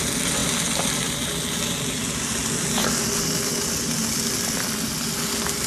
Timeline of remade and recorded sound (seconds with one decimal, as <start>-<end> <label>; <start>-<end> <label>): 0.0-5.7 recorded